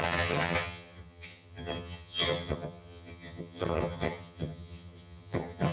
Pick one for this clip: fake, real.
fake